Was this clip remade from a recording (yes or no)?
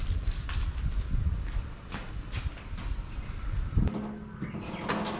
no